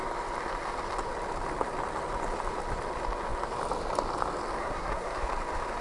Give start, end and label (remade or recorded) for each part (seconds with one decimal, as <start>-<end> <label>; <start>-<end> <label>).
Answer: 0.0-4.6 recorded; 4.6-5.2 remade; 5.2-5.8 recorded